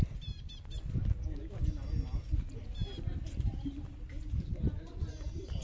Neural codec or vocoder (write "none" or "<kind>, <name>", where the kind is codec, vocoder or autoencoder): none